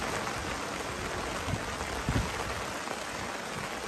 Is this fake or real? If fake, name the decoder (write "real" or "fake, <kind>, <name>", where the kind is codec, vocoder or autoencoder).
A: real